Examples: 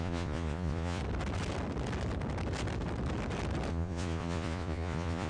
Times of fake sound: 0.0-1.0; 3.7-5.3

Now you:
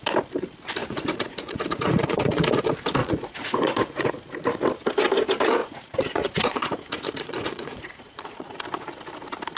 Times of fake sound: 0.8-2.6; 3.0-4.1; 5.6-8.6